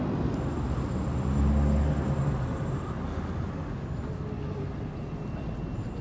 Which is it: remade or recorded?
recorded